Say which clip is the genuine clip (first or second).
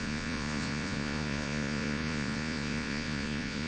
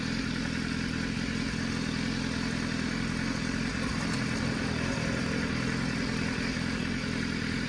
second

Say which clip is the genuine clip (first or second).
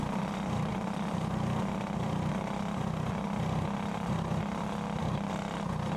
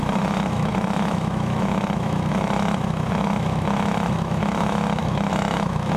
first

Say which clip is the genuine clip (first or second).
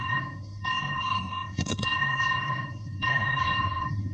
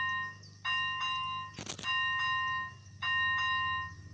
second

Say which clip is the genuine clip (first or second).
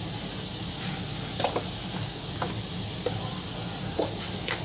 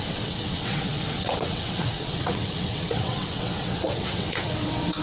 first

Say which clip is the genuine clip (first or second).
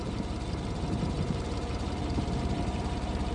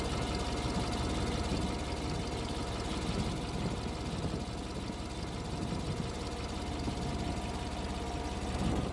second